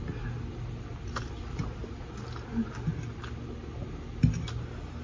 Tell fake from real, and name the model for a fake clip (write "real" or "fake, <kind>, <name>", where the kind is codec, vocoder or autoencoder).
real